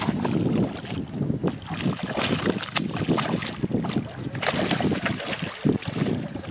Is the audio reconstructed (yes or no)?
no